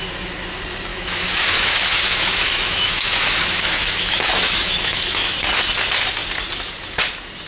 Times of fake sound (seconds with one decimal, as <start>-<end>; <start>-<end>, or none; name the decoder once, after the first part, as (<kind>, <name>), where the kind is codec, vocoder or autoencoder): 0.9-5.4 (autoencoder, DAC-VAE)